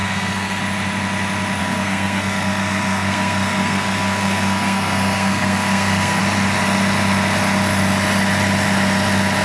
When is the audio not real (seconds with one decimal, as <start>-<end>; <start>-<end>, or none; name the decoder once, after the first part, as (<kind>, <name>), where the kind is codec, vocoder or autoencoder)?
0.0-0.6 (codec, SNAC); 1.6-6.2